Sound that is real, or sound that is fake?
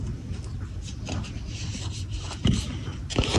real